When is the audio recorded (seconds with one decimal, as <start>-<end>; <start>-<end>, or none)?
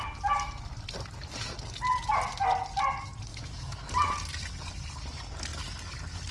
0.0-3.3; 3.9-6.3